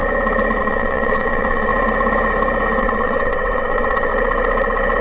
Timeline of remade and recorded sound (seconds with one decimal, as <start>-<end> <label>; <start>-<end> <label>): 0.0-0.6 recorded; 0.6-1.7 remade; 1.7-2.8 recorded; 2.8-4.1 remade; 4.1-5.0 recorded